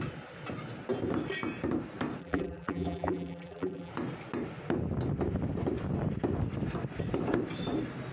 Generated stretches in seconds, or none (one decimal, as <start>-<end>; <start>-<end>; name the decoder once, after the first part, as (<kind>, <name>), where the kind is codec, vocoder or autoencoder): 2.2-3.9 (vocoder, BigVGAN v2)